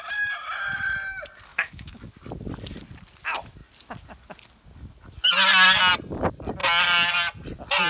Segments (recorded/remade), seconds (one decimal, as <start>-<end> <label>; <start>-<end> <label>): 0.0-1.5 recorded; 1.5-2.1 remade; 2.1-7.9 recorded